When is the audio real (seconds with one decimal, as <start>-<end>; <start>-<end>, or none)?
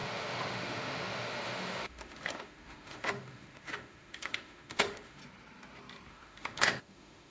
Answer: 5.2-6.1